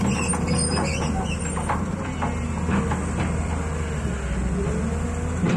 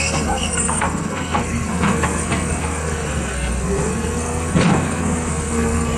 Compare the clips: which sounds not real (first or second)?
second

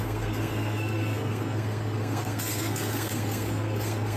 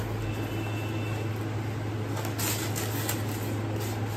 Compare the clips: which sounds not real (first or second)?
first